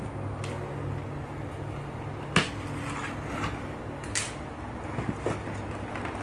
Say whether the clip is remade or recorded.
recorded